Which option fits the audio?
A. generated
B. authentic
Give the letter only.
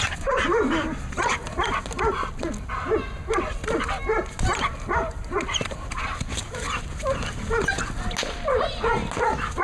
B